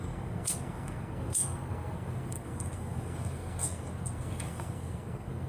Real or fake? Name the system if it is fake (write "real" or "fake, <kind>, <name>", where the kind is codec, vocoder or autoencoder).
fake, codec, SNAC